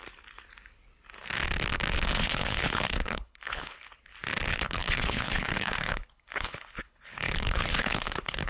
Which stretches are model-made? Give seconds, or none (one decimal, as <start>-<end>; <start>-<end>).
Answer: 2.2-4.0; 4.5-8.5